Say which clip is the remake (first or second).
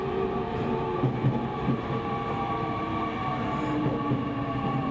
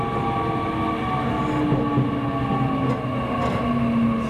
first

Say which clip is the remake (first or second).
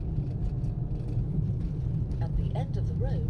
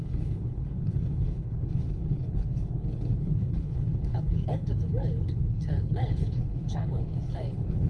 second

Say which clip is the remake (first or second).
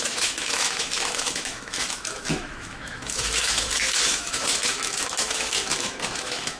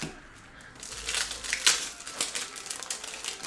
first